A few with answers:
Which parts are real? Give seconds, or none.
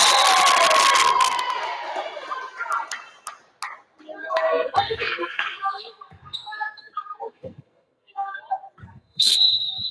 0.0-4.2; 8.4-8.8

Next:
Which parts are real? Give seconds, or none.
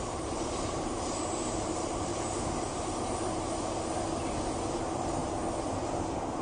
2.1-4.7; 5.2-6.4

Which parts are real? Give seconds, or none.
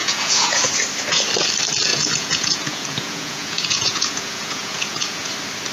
0.7-1.9; 5.3-5.7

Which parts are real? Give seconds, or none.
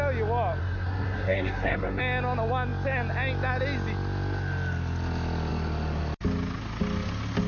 0.0-0.6; 2.0-7.5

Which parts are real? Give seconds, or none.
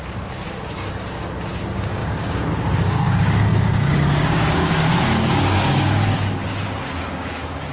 0.0-1.6